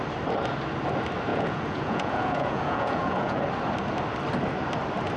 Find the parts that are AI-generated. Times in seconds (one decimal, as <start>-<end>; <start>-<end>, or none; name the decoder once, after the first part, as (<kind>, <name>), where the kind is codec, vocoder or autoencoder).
1.3-3.4 (vocoder, Vocos)